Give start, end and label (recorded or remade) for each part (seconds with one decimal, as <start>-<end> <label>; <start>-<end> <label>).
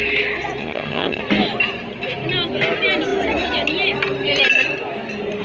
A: 0.0-0.6 recorded; 0.6-1.2 remade; 1.2-5.4 recorded